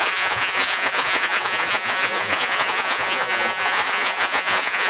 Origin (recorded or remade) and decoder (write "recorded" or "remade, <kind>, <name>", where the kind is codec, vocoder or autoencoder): remade, vocoder, Vocos